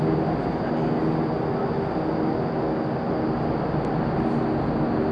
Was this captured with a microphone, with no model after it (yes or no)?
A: yes